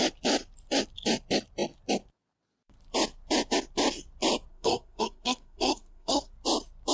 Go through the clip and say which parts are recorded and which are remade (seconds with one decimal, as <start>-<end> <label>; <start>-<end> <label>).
0.0-4.5 recorded; 4.5-6.3 remade; 6.3-6.9 recorded